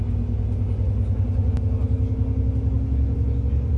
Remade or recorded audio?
recorded